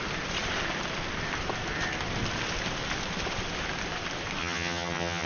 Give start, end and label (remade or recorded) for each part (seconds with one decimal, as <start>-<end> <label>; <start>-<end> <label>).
0.0-4.4 recorded; 4.4-5.3 remade